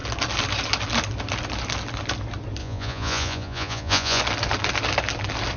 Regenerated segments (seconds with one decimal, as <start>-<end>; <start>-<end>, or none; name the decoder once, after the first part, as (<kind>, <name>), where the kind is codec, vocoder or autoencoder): 2.6-4.2 (vocoder, Vocos)